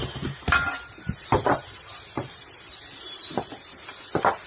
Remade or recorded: recorded